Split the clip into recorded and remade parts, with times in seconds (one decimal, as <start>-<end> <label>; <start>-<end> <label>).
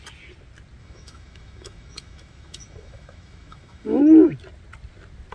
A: 0.0-0.8 recorded; 0.8-4.0 remade; 4.0-5.3 recorded